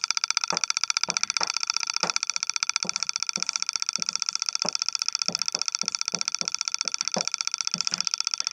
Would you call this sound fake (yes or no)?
no